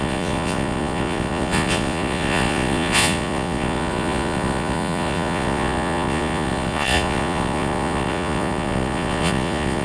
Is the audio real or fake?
fake